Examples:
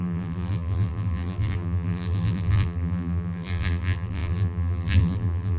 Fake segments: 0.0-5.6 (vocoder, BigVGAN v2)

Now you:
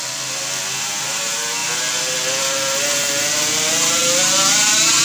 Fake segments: none

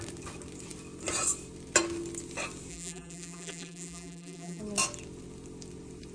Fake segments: 2.7-4.6 (vocoder, BigVGAN v2)

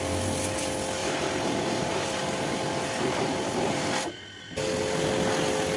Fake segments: 1.0-4.2 (vocoder, BigVGAN v2)

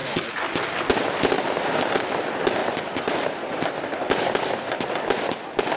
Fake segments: 2.6-3.4 (vocoder, BigVGAN v2)

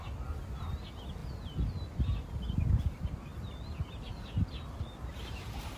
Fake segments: none

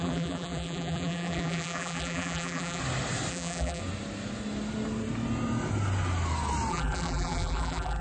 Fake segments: 0.0-2.8 (vocoder, BigVGAN v2); 3.3-3.8; 6.7-8.0